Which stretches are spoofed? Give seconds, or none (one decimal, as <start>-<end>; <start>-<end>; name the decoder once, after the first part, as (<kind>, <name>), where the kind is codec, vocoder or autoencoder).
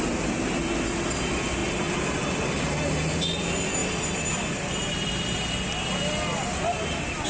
1.6-3.2 (vocoder, BigVGAN v2)